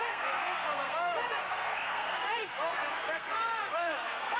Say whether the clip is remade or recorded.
remade